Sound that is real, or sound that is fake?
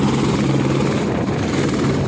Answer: real